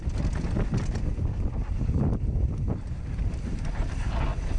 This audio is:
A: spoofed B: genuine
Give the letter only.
B